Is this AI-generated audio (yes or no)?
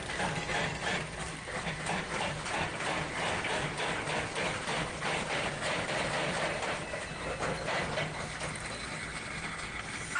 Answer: no